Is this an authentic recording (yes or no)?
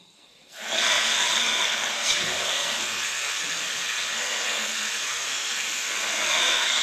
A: no